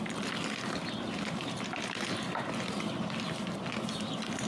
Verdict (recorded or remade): recorded